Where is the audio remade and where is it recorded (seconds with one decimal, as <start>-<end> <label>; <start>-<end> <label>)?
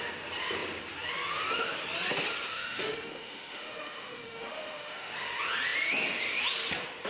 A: 0.0-2.5 recorded; 2.5-5.1 remade; 5.1-7.1 recorded